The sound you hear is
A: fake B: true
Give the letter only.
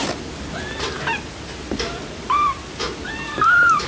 B